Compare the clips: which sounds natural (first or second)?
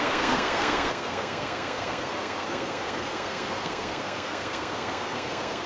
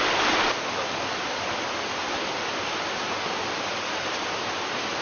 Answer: second